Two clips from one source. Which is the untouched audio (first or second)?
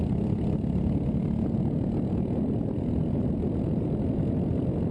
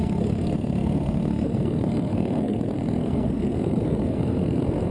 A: first